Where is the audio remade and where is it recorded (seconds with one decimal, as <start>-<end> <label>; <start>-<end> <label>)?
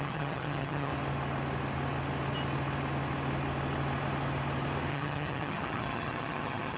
0.0-0.9 remade; 0.9-4.9 recorded; 4.9-6.8 remade